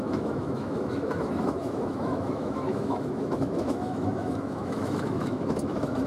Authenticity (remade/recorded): remade